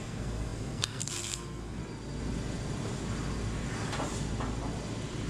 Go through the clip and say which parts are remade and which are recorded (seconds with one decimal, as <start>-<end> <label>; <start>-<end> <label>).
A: 0.0-1.8 remade; 1.8-5.3 recorded